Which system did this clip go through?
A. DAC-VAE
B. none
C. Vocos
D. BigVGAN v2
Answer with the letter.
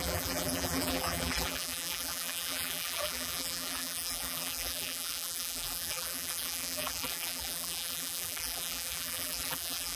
D